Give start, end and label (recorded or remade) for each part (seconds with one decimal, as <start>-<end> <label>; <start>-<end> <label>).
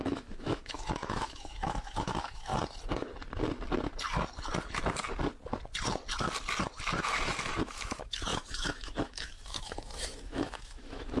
0.0-2.5 remade; 2.5-7.6 recorded; 7.6-11.2 remade